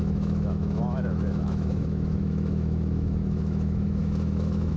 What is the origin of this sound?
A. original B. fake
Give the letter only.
B